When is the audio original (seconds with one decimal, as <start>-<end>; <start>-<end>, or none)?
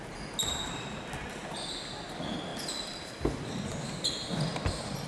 0.0-2.5; 3.1-5.1